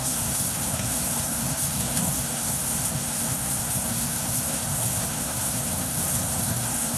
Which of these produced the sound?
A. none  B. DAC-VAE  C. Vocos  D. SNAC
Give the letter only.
D